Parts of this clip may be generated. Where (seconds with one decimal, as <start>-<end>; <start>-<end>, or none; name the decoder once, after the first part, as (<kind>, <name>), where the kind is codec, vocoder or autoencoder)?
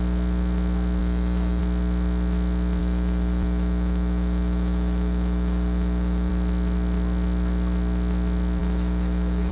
1.0-1.6 (autoencoder, DAC-VAE); 2.8-6.3; 8.6-9.5